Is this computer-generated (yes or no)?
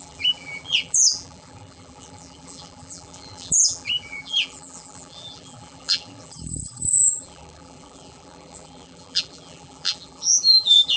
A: yes